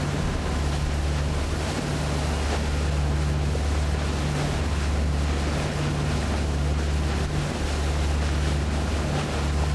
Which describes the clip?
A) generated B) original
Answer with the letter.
B